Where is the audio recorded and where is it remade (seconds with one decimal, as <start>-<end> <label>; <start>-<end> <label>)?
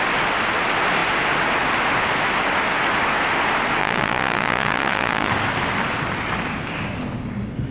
0.0-3.8 recorded; 3.8-5.3 remade; 5.3-7.7 recorded